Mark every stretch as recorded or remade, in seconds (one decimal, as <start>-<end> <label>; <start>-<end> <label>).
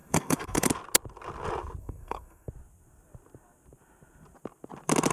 0.0-0.7 remade; 0.7-1.8 recorded; 1.8-2.5 remade; 2.5-5.1 recorded